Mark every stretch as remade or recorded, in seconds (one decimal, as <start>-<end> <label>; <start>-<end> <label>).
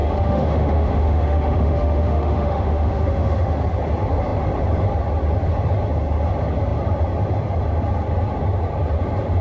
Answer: 0.0-3.5 remade; 3.5-9.4 recorded